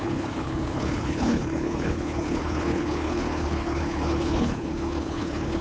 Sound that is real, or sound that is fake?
fake